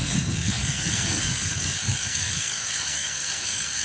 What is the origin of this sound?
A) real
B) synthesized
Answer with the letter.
B